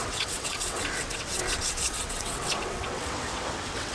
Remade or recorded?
remade